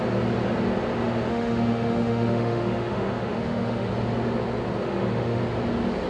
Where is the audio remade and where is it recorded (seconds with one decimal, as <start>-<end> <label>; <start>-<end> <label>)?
0.0-1.3 recorded; 1.3-3.9 remade; 3.9-4.8 recorded; 4.8-5.4 remade; 5.4-6.1 recorded